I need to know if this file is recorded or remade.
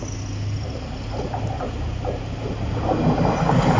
recorded